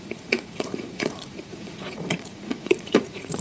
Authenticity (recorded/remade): remade